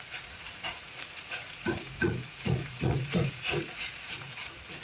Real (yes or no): no